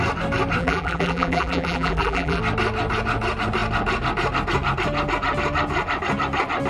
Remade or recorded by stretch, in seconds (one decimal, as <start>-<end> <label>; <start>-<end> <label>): 0.0-0.6 recorded; 0.6-2.4 remade; 2.4-6.7 recorded